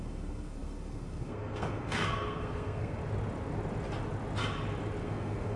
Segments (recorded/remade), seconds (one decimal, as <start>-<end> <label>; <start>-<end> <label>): 0.0-3.0 remade; 3.0-5.0 recorded; 5.0-5.6 remade